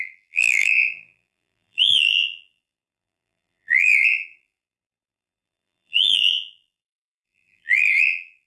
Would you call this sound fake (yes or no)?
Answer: yes